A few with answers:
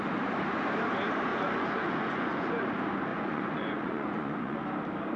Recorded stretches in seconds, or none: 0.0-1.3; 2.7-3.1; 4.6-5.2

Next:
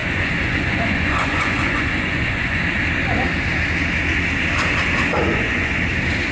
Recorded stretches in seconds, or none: 2.6-5.2; 5.8-6.3

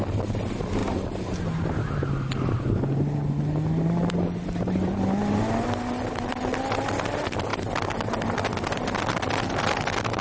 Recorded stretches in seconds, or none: 0.0-10.2

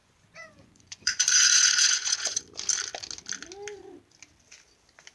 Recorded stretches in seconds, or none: 2.4-5.1

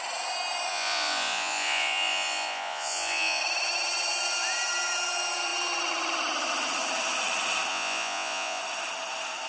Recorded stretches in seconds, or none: 0.0-0.7; 3.4-7.7; 8.6-9.5

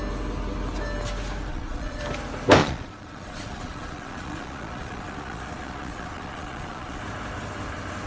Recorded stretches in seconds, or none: 0.0-1.5; 2.0-2.6; 7.0-8.1

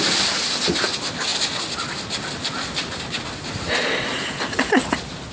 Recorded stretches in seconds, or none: 0.0-5.3

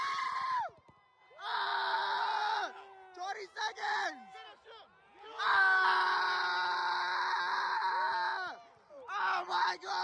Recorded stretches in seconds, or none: 0.0-10.0